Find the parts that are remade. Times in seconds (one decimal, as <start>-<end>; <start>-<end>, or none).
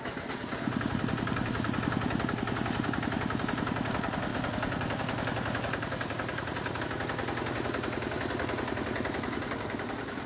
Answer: 4.3-6.8